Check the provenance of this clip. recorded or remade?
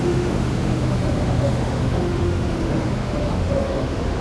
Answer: remade